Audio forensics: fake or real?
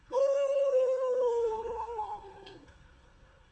fake